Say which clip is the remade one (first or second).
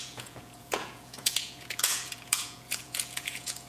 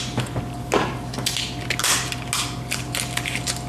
first